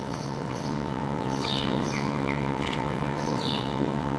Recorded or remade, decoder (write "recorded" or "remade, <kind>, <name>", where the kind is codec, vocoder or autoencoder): remade, vocoder, WaveNeXt